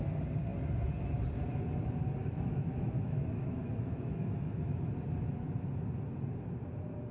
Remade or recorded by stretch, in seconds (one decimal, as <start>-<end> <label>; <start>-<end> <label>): 0.0-2.2 recorded; 2.2-4.9 remade; 4.9-7.1 recorded